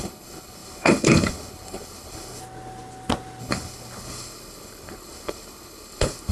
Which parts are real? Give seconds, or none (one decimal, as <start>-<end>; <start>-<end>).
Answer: 2.4-3.4